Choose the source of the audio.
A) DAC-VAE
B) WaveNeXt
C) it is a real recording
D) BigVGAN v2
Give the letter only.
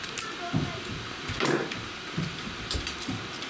D